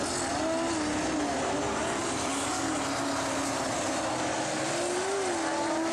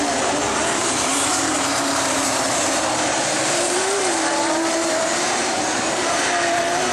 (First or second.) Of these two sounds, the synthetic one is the second